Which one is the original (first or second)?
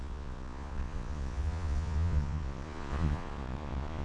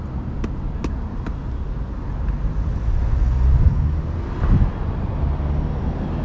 second